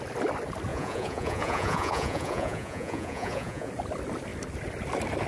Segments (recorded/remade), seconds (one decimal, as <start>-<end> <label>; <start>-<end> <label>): 0.0-0.7 recorded; 0.7-3.7 remade; 3.7-5.3 recorded